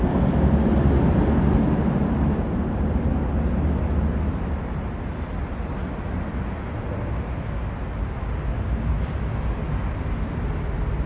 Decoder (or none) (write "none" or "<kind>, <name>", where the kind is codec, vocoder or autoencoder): none